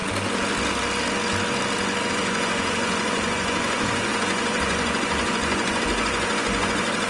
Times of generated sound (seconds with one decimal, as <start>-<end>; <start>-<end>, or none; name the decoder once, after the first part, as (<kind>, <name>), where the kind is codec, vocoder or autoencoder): 2.1-7.1 (vocoder, Vocos)